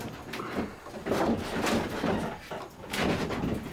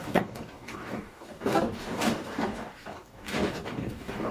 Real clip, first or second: first